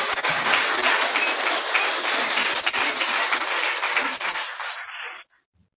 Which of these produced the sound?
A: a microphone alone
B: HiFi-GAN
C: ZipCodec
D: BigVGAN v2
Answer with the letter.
D